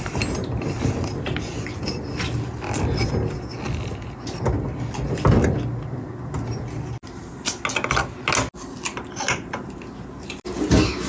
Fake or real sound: real